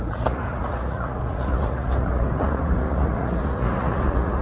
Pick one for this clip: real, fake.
fake